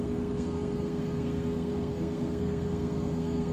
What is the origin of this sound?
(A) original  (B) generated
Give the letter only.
B